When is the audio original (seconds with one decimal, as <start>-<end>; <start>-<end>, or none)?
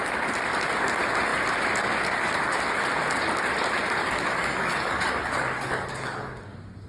0.0-4.0; 6.3-6.9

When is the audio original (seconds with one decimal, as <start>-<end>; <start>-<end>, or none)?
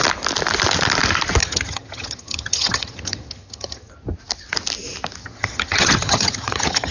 0.0-1.4; 3.9-5.2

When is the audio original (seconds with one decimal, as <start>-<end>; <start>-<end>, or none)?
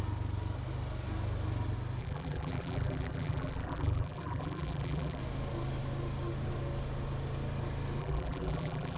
0.0-2.0; 5.2-8.0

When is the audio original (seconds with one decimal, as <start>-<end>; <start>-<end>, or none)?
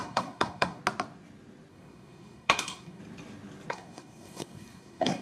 0.8-1.7; 3.0-3.7